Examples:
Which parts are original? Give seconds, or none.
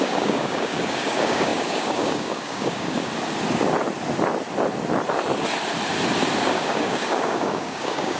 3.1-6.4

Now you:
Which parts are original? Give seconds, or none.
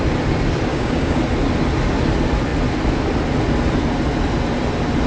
0.0-0.7; 1.2-5.1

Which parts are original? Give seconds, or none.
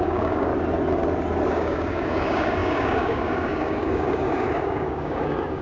0.5-1.5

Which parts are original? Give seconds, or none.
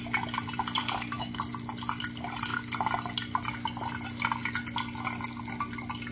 0.0-0.8; 1.4-6.1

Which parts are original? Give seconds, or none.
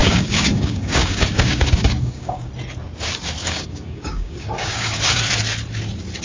2.5-3.4; 5.2-6.2